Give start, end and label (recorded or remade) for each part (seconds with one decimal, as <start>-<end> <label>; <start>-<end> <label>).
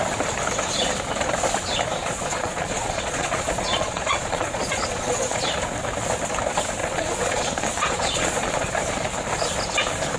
0.0-2.0 recorded; 2.0-5.5 remade; 5.5-6.8 recorded; 6.8-8.7 remade; 8.7-10.2 recorded